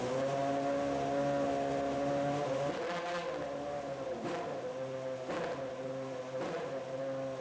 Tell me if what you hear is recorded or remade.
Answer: recorded